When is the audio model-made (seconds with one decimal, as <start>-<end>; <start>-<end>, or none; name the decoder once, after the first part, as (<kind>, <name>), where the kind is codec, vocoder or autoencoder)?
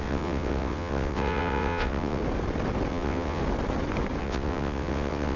0.0-2.2 (vocoder, WaveNeXt); 2.9-3.4; 4.2-5.4